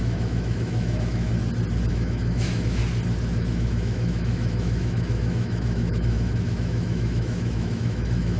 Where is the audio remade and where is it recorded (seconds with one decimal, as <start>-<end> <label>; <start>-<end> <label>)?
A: 0.0-1.3 remade; 1.3-1.9 recorded; 1.9-2.8 remade; 2.8-3.5 recorded; 3.5-8.4 remade